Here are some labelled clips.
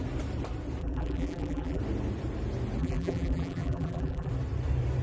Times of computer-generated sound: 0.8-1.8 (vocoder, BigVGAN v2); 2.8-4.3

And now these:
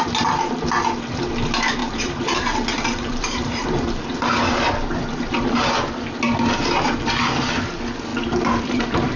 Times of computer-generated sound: 1.8-5.5 (vocoder, BigVGAN v2); 8.1-9.2